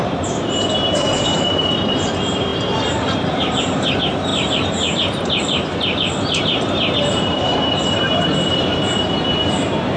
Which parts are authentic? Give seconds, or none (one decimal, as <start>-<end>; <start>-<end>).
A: none